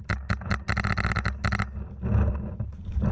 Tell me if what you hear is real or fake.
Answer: real